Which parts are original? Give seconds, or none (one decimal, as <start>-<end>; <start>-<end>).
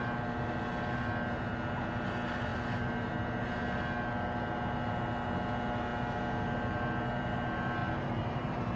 0.0-7.8